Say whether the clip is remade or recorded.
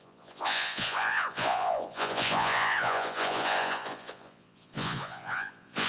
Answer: remade